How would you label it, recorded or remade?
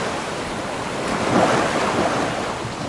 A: recorded